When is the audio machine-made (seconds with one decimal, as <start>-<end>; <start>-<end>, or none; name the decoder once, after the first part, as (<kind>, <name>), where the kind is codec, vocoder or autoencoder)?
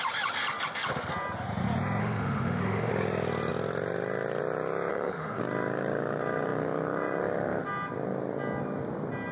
2.0-2.9 (autoencoder, DAC-VAE); 4.9-5.4